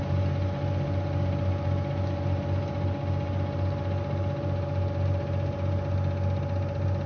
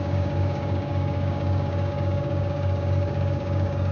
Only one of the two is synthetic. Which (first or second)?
second